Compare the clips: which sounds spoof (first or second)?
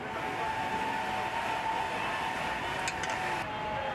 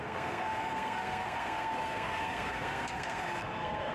second